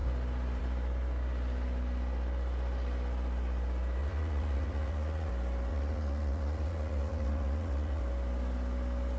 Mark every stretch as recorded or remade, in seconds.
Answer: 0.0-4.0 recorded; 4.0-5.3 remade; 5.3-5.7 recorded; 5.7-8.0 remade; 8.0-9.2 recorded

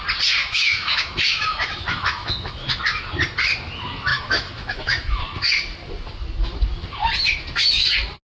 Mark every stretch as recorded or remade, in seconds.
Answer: 0.0-0.4 recorded; 0.4-2.8 remade; 2.8-4.1 recorded; 4.1-5.2 remade; 5.2-8.3 recorded

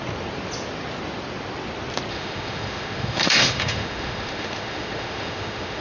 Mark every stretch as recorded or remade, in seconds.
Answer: 0.0-2.1 recorded; 2.1-5.8 remade

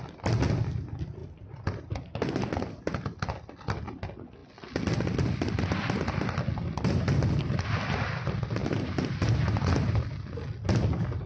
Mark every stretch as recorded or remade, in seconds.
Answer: 0.0-8.6 recorded; 8.6-10.0 remade; 10.0-11.3 recorded

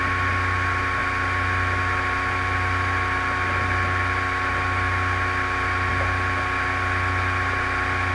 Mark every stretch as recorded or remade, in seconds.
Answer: 0.0-8.1 recorded

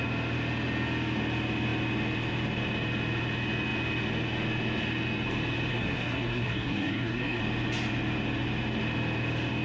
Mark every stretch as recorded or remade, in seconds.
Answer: 0.0-5.7 recorded; 5.7-7.4 remade; 7.4-9.6 recorded

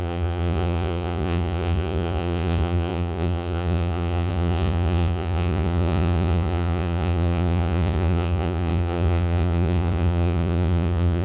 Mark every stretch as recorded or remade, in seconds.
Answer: 0.0-11.2 remade

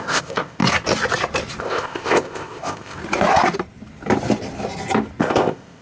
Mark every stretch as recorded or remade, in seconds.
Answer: 0.0-0.6 remade; 0.6-1.6 recorded; 1.6-3.0 remade; 3.0-5.2 recorded; 5.2-5.8 remade